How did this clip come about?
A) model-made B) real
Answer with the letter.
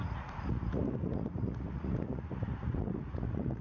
A